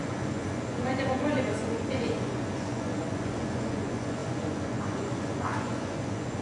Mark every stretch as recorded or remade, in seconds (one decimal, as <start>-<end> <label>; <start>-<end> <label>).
0.0-6.4 remade